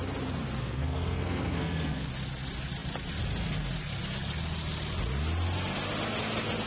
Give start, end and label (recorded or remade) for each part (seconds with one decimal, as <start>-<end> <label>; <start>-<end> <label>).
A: 0.0-0.6 recorded; 0.6-2.1 remade; 2.1-6.7 recorded